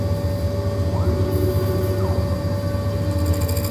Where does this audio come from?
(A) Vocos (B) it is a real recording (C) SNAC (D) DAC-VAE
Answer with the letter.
B